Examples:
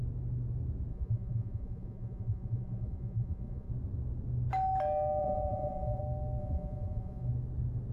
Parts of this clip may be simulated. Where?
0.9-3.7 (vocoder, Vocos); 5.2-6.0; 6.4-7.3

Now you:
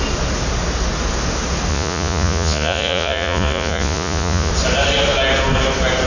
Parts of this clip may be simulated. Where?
1.7-4.5 (vocoder, Vocos)

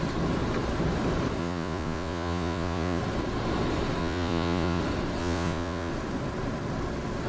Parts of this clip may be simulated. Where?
1.4-3.0 (vocoder, Vocos); 4.0-4.8; 5.2-5.9

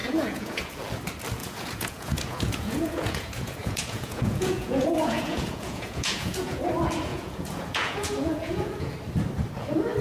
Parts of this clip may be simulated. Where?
0.0-0.7 (vocoder, Vocos); 1.4-6.6; 7.1-8.9

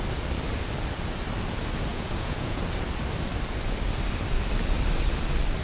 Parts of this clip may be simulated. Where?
1.9-2.6 (vocoder, Vocos)

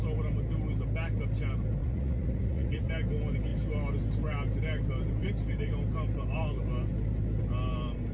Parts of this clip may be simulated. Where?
1.8-2.9 (vocoder, Vocos)

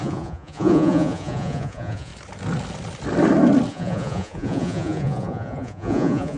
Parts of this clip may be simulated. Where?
0.0-2.1 (vocoder, Vocos); 3.7-6.4